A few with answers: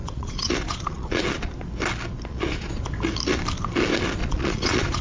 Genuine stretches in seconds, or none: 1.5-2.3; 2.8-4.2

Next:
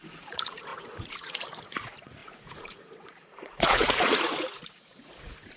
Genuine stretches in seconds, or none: none

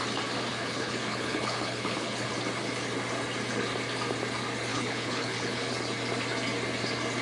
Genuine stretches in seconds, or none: 0.0-0.5; 2.3-4.7; 5.7-7.2

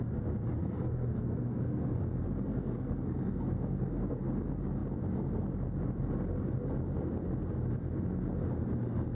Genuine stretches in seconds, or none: 0.0-0.6; 2.0-2.5; 4.2-9.1

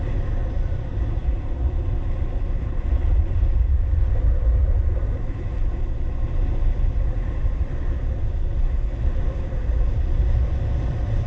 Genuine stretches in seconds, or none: 0.0-11.3